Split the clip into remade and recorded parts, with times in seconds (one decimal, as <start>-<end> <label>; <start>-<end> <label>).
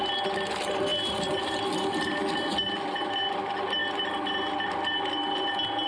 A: 0.0-0.9 recorded; 0.9-1.6 remade; 1.6-3.8 recorded; 3.8-4.7 remade; 4.7-5.9 recorded